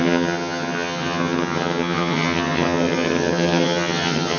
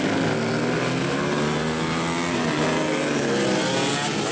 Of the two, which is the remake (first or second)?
first